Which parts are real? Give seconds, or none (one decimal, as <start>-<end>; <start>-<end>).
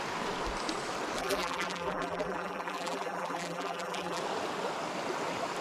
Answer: 0.0-1.2; 4.2-5.6